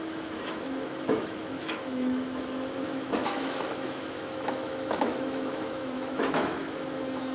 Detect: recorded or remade remade